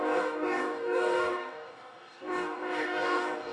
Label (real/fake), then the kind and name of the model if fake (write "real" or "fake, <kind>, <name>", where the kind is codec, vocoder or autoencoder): fake, codec, DAC